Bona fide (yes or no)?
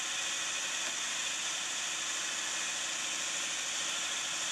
yes